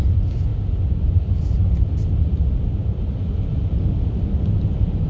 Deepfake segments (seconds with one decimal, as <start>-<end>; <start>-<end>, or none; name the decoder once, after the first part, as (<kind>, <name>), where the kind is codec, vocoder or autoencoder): none